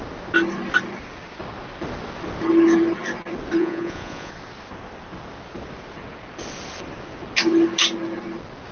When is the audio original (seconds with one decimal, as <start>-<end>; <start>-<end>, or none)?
0.0-3.6; 4.3-8.7